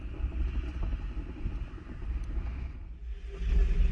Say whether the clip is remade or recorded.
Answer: recorded